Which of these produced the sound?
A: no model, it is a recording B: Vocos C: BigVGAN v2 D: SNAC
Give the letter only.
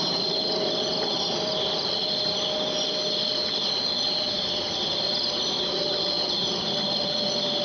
A